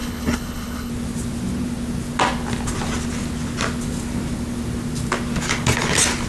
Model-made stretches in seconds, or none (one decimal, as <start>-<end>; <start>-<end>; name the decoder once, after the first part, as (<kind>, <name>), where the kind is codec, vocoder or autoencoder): 0.0-0.9 (codec, HILCodec)